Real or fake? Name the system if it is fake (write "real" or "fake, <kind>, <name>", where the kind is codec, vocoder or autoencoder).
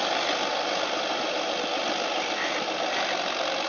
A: fake, vocoder, BigVGAN v2